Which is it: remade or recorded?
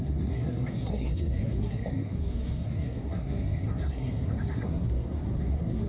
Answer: remade